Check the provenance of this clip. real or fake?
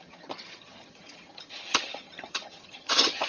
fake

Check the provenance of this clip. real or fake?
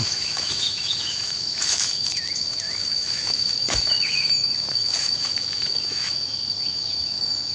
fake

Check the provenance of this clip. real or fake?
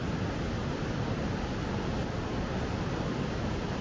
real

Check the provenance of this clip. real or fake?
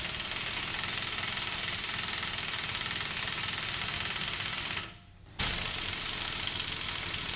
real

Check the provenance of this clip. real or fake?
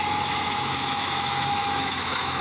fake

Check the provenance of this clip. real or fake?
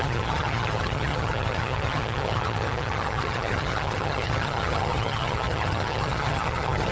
fake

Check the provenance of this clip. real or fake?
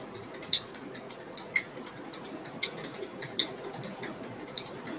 fake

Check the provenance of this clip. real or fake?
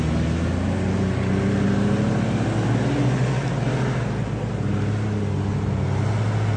real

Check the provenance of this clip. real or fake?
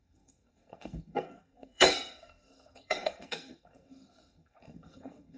fake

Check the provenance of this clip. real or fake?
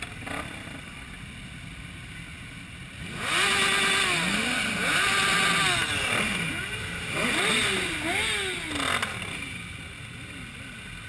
real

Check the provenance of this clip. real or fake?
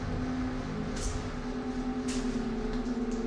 real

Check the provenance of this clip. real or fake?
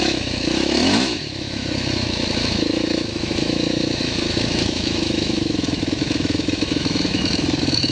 fake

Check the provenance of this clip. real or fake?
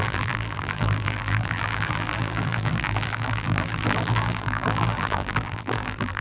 fake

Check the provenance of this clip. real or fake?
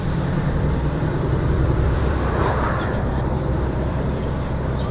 fake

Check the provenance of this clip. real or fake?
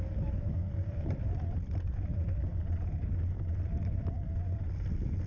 fake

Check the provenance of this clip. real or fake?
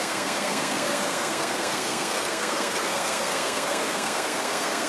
fake